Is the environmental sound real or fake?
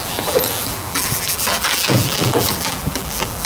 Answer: fake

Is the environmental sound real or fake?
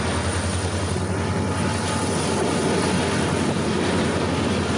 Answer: real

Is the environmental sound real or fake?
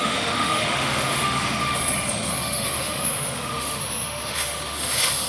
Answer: fake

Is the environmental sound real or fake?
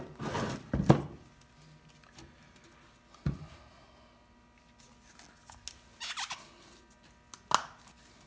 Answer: real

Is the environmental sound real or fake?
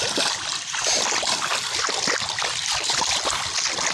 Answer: real